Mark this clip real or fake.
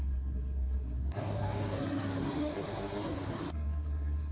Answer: fake